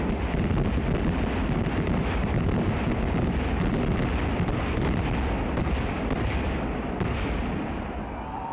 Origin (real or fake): real